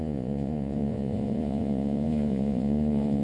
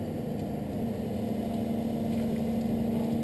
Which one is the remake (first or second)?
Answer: first